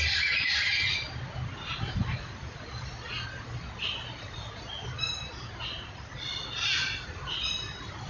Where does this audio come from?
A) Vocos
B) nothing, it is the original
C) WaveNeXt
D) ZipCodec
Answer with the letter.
B